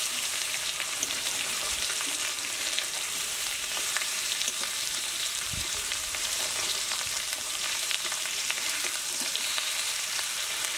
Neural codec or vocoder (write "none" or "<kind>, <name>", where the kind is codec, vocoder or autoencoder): vocoder, BigVGAN v2